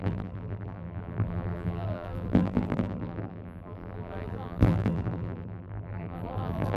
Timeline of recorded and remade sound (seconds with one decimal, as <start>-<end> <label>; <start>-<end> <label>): 0.0-6.8 remade

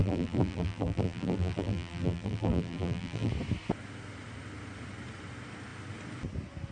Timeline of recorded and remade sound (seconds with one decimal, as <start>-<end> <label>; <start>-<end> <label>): 0.0-3.3 remade; 3.3-6.7 recorded